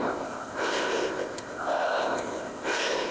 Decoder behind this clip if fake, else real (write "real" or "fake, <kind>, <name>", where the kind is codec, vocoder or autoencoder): fake, codec, ZipCodec